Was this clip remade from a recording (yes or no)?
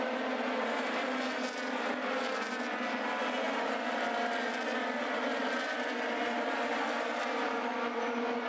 no